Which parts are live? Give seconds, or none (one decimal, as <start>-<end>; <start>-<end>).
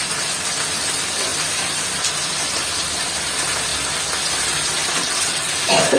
0.0-5.0; 5.5-6.0